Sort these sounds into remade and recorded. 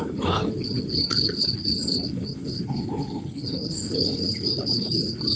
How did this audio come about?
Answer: remade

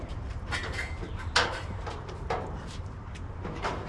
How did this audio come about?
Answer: remade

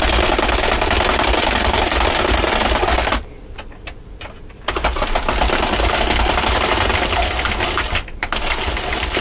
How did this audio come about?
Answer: recorded